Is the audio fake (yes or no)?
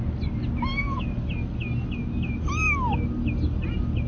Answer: no